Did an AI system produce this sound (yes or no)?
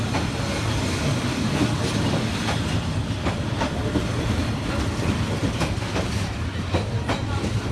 no